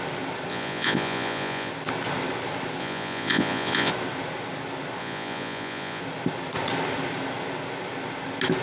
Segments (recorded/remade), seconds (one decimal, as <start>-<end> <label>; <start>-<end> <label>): 0.0-0.5 recorded; 0.5-1.7 remade; 1.7-2.8 recorded; 2.8-3.9 remade; 3.9-5.0 recorded; 5.0-6.0 remade; 6.0-8.6 recorded